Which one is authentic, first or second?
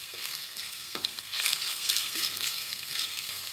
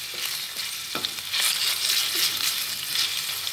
second